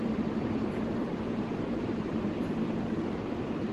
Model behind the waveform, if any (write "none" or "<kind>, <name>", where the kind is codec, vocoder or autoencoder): vocoder, BigVGAN v2